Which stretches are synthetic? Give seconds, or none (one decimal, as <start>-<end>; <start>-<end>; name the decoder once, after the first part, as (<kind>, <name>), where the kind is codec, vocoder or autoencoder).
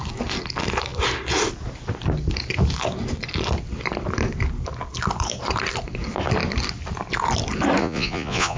7.8-8.6 (vocoder, Vocos)